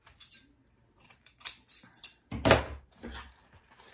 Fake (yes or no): no